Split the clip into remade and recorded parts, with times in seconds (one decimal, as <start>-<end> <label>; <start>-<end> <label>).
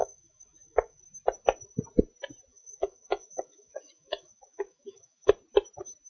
0.0-1.0 remade; 1.0-2.5 recorded; 2.5-5.3 remade; 5.3-6.1 recorded